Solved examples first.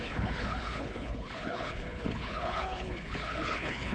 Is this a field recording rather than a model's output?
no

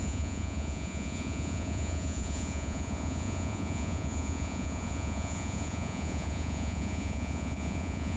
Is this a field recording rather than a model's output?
no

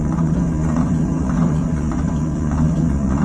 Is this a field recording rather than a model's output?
no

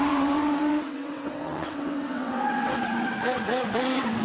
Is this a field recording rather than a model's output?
no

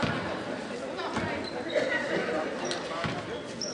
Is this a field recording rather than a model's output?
yes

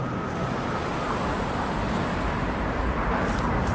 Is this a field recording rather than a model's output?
no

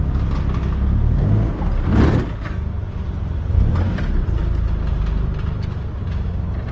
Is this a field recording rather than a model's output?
yes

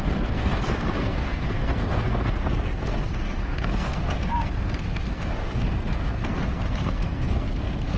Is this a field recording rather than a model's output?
no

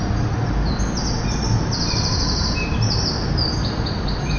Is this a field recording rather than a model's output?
yes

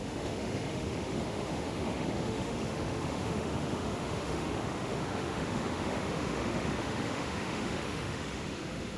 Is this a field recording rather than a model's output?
no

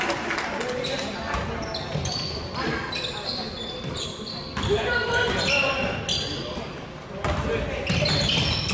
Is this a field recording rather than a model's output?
yes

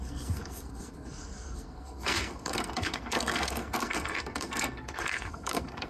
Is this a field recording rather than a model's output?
no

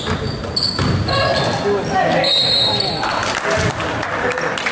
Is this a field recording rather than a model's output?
yes